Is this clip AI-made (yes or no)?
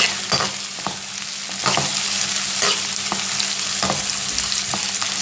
no